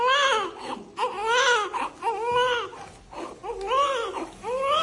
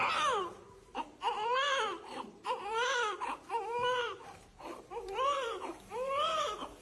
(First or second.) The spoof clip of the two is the second